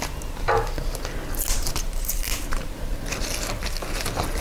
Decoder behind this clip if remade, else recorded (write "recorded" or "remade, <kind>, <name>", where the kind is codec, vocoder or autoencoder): recorded